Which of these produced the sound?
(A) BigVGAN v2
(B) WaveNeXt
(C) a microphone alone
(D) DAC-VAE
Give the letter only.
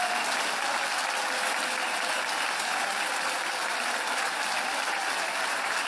C